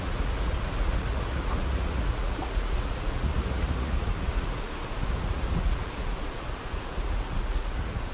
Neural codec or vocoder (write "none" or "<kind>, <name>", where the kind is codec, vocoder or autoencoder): vocoder, Vocos